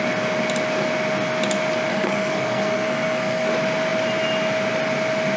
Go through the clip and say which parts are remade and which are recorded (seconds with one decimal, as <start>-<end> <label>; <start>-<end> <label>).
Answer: 0.0-1.9 recorded; 1.9-3.5 remade; 3.5-5.4 recorded